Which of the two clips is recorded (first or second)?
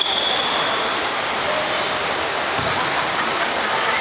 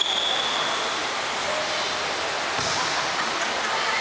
second